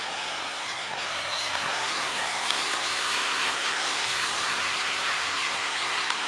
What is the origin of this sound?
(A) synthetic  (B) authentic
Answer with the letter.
A